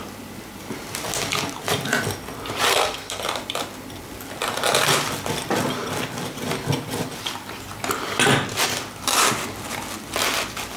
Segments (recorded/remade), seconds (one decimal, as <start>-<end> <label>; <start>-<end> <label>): 0.0-2.7 recorded; 2.7-3.2 remade; 3.2-10.8 recorded